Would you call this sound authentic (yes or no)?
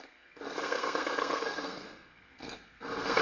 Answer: no